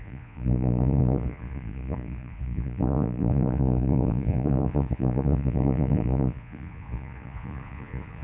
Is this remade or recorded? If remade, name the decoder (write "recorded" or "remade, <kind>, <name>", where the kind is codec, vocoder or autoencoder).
remade, vocoder, Vocos